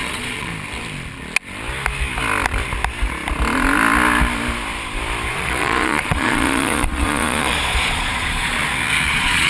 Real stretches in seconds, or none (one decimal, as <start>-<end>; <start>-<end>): 0.5-5.3; 8.6-9.1